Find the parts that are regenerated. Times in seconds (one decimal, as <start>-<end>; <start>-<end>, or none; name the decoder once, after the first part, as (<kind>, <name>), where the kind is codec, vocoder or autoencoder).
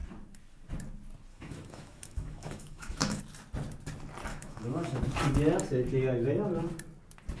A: 1.3-3.2 (autoencoder, DAC-VAE); 4.3-5.0